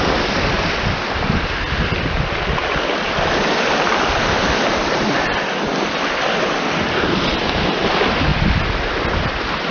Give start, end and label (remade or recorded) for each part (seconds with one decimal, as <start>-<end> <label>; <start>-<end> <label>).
0.0-9.7 recorded